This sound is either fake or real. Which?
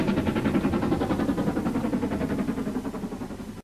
real